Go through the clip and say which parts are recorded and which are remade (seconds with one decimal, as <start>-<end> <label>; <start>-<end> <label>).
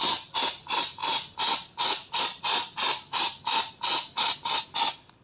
0.0-1.0 remade; 1.0-2.2 recorded; 2.2-2.6 remade; 2.6-4.7 recorded; 4.7-5.2 remade